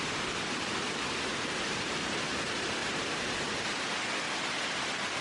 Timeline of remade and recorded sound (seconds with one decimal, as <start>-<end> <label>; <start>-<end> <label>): 0.0-1.3 recorded; 1.3-2.3 remade; 2.3-2.8 recorded; 2.8-3.9 remade; 3.9-5.2 recorded